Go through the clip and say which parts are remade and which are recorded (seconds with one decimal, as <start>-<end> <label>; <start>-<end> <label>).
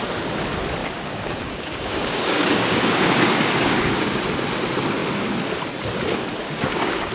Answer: 0.0-0.8 recorded; 0.8-4.2 remade; 4.2-6.4 recorded; 6.4-7.1 remade